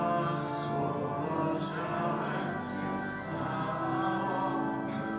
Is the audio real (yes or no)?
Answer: yes